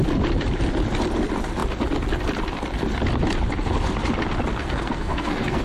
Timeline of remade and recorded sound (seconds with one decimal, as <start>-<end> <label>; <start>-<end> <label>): 0.0-4.6 recorded; 4.6-5.6 remade